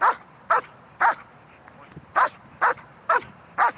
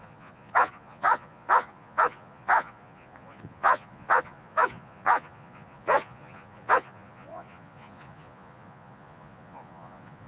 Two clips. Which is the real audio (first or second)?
first